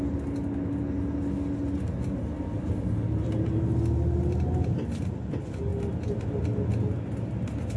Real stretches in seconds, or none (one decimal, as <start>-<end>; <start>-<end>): 0.0-7.8